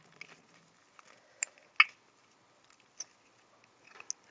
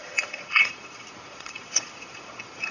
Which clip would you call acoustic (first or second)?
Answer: first